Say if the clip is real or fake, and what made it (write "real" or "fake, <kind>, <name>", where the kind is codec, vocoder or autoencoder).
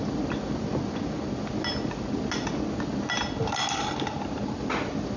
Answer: real